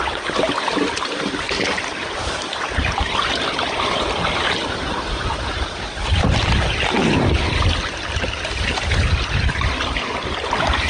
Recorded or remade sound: recorded